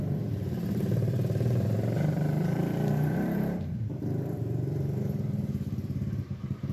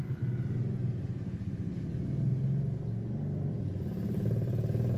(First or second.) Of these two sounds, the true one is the second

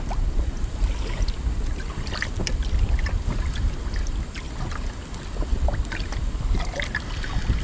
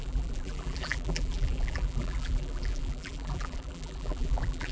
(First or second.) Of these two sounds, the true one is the first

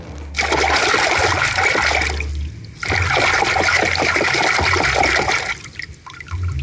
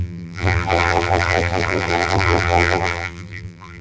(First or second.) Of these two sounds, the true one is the first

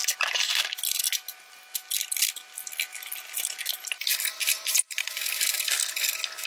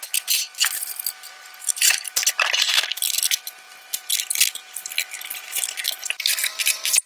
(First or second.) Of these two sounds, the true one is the first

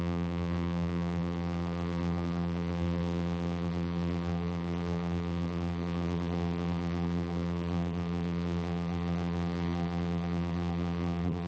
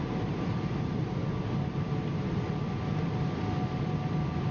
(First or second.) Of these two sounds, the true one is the second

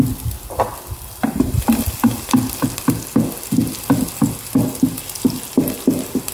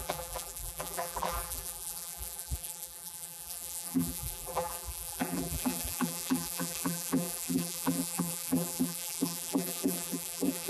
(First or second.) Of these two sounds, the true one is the first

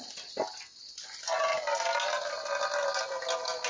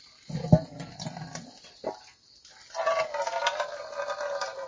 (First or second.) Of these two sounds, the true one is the first